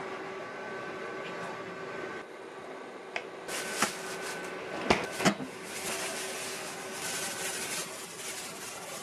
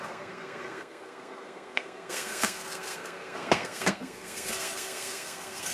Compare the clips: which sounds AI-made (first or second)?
second